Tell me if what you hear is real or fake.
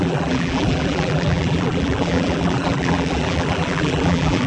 fake